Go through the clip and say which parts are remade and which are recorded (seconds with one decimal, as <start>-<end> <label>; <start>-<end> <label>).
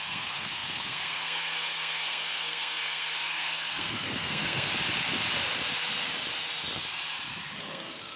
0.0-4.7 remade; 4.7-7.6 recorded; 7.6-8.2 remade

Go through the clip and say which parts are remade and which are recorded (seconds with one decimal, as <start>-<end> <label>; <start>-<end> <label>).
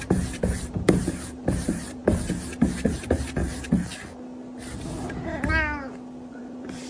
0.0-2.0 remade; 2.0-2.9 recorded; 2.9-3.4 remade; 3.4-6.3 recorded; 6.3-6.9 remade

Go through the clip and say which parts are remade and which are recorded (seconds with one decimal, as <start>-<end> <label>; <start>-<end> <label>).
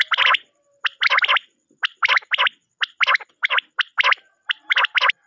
0.0-5.3 recorded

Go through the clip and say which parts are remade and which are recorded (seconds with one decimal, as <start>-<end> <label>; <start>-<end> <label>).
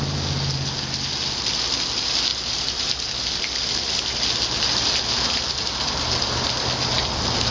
0.0-7.5 recorded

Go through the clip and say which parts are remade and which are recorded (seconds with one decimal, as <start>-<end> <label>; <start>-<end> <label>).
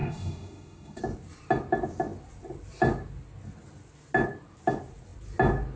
0.0-1.0 remade; 1.0-5.8 recorded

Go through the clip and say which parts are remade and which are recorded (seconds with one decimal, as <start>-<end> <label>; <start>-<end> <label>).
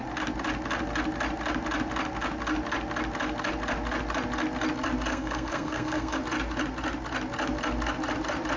0.0-5.1 recorded; 5.1-6.2 remade; 6.2-8.6 recorded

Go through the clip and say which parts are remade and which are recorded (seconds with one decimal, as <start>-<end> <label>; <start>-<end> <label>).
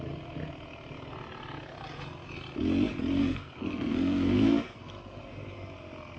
0.0-3.2 recorded; 3.2-4.9 remade; 4.9-6.2 recorded